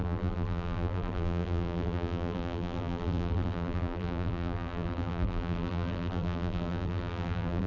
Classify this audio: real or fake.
fake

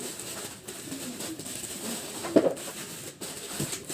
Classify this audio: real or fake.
real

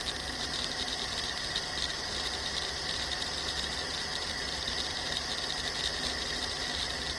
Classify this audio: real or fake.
real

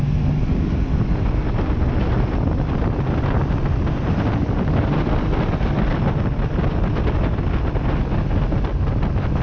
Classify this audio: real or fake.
real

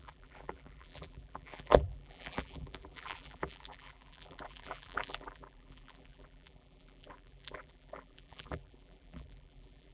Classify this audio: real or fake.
fake